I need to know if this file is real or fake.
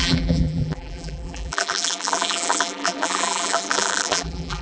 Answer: fake